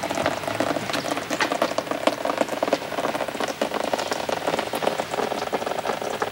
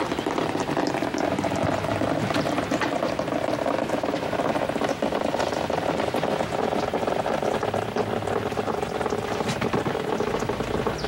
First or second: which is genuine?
first